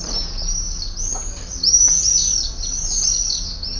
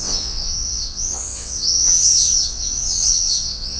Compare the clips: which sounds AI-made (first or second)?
second